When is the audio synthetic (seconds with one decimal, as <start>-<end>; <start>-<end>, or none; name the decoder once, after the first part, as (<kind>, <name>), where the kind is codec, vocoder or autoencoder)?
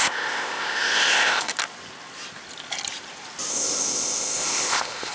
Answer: 0.0-1.5 (codec, ZipCodec); 3.5-5.1